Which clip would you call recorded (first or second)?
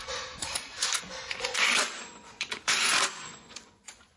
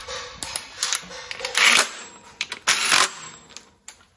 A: second